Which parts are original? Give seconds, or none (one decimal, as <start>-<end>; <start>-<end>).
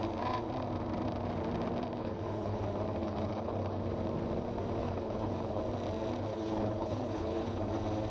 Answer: 0.0-2.0; 2.6-3.0; 3.8-4.8; 5.6-6.3; 7.6-8.1